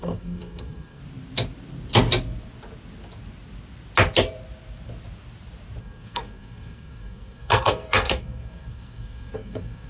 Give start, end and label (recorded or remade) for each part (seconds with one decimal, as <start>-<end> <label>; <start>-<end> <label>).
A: 0.0-1.0 remade; 1.0-5.8 recorded; 5.8-9.9 remade